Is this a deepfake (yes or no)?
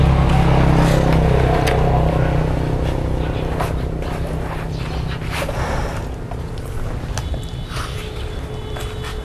no